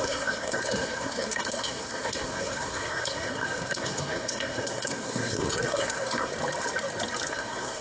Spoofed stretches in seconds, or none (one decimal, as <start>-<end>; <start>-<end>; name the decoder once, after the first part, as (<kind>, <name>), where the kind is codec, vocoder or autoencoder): 0.0-6.3 (codec, SNAC); 7.3-7.8